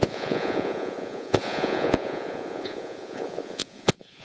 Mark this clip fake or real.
fake